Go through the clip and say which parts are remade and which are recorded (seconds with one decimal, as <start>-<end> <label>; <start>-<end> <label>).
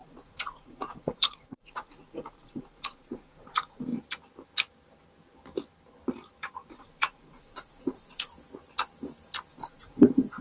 0.0-3.9 remade; 3.9-6.7 recorded; 6.7-8.3 remade; 8.3-9.5 recorded; 9.5-10.4 remade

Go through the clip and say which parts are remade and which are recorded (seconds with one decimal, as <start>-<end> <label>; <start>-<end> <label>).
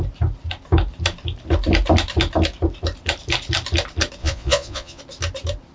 0.0-4.2 recorded; 4.2-5.0 remade; 5.0-5.7 recorded